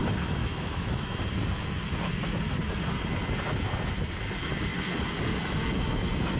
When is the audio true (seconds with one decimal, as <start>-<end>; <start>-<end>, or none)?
0.0-0.4; 1.2-6.4